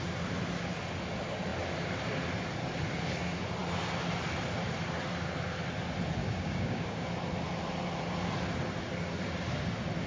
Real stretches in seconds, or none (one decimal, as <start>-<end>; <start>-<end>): 0.0-6.2; 7.1-10.1